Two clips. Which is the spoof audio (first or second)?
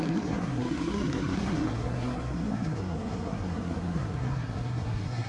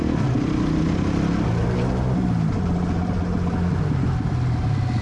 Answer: first